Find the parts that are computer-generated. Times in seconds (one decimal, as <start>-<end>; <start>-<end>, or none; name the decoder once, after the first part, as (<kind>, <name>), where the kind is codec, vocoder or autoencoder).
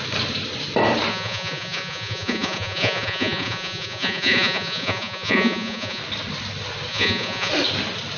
1.1-6.0 (vocoder, Vocos); 6.9-7.5